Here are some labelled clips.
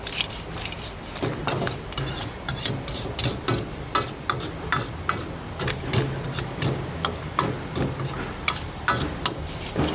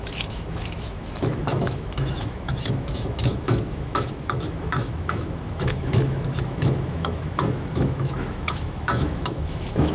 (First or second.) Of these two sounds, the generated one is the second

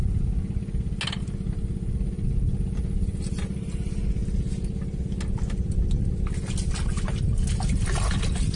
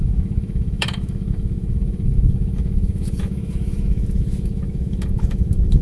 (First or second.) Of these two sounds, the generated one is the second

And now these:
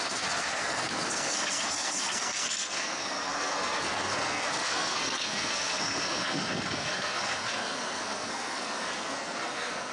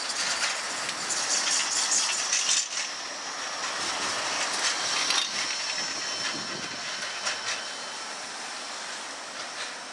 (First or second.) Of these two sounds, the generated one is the first